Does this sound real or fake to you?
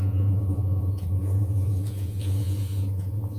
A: fake